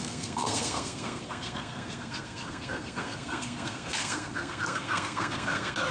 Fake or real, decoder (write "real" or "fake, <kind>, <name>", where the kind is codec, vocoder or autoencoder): fake, codec, SNAC